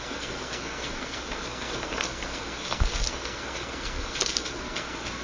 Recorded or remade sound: remade